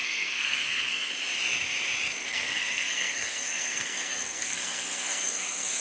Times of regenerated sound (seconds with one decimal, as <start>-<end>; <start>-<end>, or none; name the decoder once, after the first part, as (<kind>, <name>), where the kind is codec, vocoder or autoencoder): 0.0-1.1 (codec, SNAC); 2.2-5.8